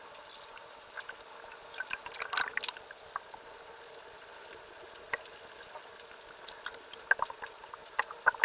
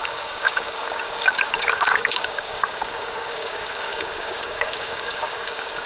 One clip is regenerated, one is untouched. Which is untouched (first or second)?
first